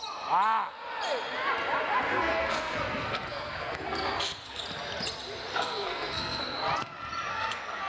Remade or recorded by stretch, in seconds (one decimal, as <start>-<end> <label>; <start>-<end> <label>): 0.0-2.1 recorded; 2.1-4.6 remade; 4.6-5.5 recorded; 5.5-6.4 remade; 6.4-7.3 recorded; 7.3-7.9 remade